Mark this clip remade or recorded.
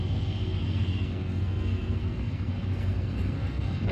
remade